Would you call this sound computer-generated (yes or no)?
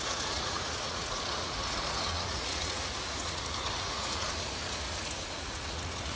yes